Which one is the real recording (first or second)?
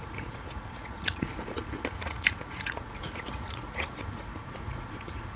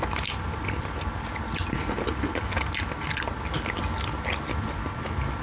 second